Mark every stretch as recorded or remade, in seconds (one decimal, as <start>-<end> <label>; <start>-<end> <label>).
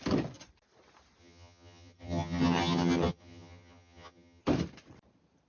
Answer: 0.0-1.2 recorded; 1.2-4.4 remade; 4.4-5.5 recorded